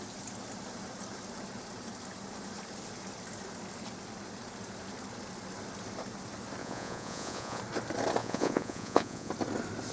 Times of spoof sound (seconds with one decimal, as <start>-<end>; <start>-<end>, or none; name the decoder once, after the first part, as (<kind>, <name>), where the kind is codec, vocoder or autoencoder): 6.6-7.6 (vocoder, Vocos); 8.2-9.3